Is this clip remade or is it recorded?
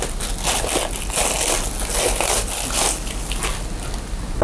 recorded